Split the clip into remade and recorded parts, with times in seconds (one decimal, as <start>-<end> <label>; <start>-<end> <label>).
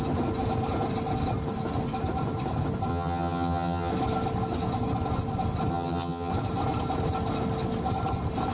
0.0-2.9 recorded; 2.9-3.9 remade; 3.9-5.7 recorded; 5.7-6.3 remade; 6.3-8.5 recorded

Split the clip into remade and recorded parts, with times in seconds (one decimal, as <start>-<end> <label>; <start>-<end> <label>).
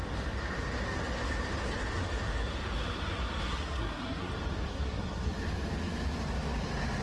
0.0-3.5 recorded; 3.5-4.3 remade; 4.3-4.7 recorded; 4.7-5.3 remade; 5.3-7.0 recorded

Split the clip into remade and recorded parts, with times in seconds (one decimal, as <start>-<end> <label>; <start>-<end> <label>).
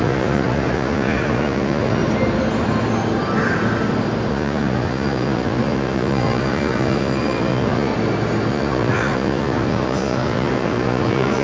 0.0-2.0 remade; 2.0-4.3 recorded; 4.3-7.9 remade; 7.9-8.5 recorded; 8.5-11.4 remade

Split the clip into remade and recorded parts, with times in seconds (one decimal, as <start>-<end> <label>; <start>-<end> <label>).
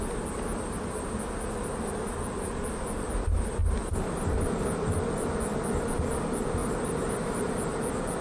0.0-3.6 recorded; 3.6-5.3 remade; 5.3-6.6 recorded; 6.6-7.5 remade; 7.5-8.2 recorded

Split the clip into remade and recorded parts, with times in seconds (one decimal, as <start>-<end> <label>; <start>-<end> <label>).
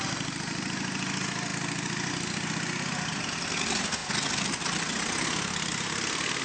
0.0-6.4 recorded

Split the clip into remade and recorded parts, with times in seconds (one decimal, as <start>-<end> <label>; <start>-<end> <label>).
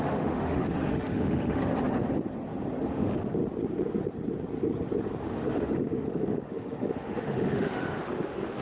0.0-1.6 remade; 1.6-2.9 recorded; 2.9-3.4 remade; 3.4-5.2 recorded; 5.2-8.6 remade